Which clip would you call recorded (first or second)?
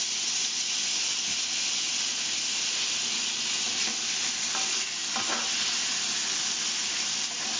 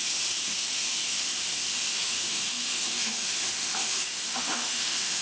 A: first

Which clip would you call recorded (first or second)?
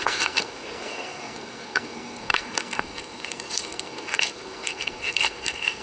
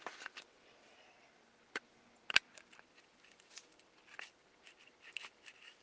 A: second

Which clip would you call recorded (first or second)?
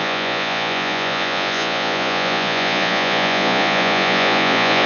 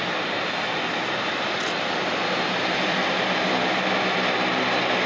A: second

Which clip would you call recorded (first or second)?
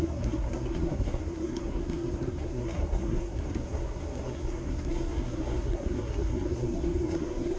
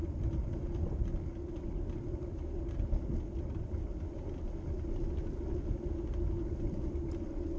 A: second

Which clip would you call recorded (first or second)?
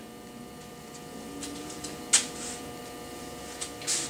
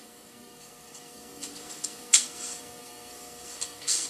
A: first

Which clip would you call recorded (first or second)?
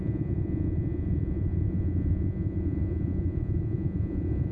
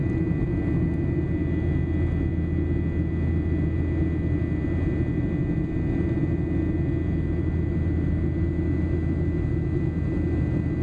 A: second